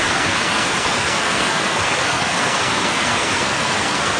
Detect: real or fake fake